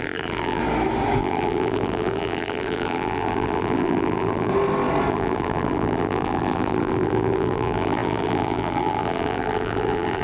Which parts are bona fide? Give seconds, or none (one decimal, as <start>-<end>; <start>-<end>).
0.6-1.2; 4.5-5.1